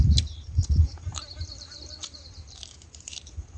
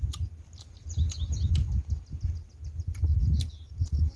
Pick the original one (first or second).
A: second